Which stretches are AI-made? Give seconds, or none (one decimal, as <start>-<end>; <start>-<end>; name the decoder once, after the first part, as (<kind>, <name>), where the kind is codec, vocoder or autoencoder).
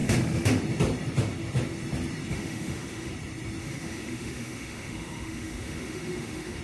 0.0-0.6 (autoencoder, DAC-VAE); 2.3-3.1; 3.6-6.6